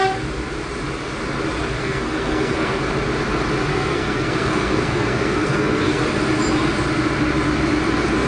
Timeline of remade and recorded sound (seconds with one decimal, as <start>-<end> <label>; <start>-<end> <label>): 0.0-1.8 recorded; 1.8-2.8 remade; 2.8-3.7 recorded; 3.7-6.0 remade; 6.0-8.3 recorded

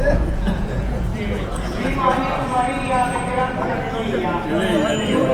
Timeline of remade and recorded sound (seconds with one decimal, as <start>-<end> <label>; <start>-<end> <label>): 0.0-2.1 remade; 2.1-4.5 recorded; 4.5-5.3 remade

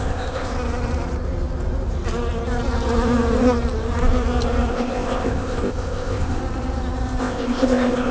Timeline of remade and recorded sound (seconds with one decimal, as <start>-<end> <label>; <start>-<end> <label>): 0.0-0.5 remade; 0.5-4.7 recorded; 4.7-6.4 remade; 6.4-7.2 recorded; 7.2-8.1 remade

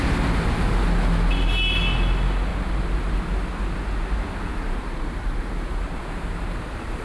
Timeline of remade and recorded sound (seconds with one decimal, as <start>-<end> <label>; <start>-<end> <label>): 0.0-2.5 recorded; 2.5-3.2 remade; 3.2-4.5 recorded; 4.5-6.0 remade; 6.0-7.0 recorded

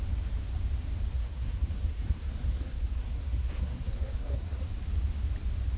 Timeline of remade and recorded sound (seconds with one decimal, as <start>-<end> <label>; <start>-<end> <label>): 0.0-1.1 recorded; 1.1-4.6 remade; 4.6-5.8 recorded